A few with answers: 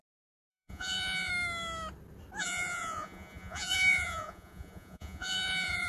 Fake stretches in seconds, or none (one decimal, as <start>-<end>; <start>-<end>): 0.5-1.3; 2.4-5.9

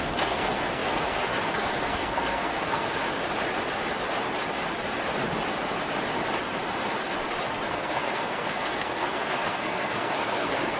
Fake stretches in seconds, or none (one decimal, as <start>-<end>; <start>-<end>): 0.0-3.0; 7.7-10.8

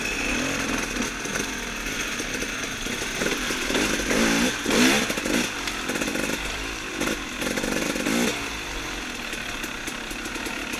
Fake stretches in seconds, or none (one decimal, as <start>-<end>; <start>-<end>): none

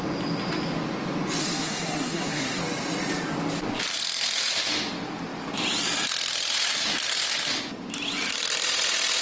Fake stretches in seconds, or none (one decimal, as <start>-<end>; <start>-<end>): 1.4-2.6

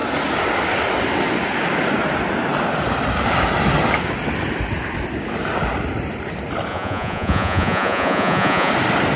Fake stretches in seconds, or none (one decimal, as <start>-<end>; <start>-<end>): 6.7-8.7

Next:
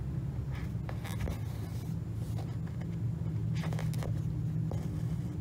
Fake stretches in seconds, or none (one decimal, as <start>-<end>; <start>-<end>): none

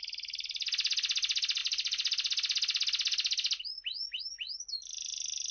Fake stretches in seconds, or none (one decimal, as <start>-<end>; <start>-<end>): 1.6-4.2

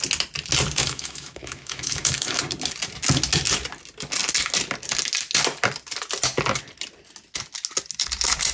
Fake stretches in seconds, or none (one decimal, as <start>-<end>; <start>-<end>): 0.8-2.4